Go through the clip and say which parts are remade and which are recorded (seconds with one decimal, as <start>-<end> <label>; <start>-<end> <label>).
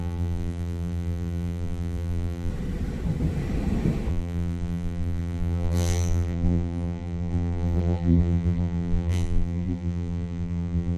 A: 0.0-2.5 remade; 2.5-4.1 recorded; 4.1-11.0 remade